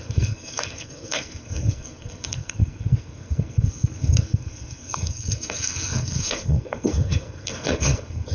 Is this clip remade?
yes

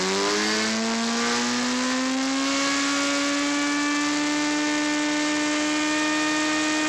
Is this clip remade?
no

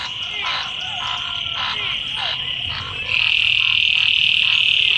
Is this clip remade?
no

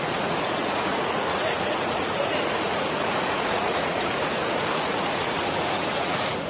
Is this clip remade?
yes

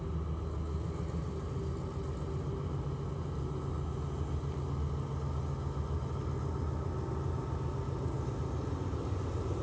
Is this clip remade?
no